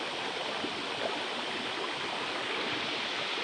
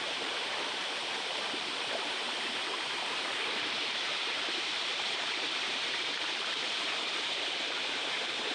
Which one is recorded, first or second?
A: first